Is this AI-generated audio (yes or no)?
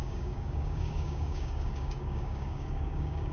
yes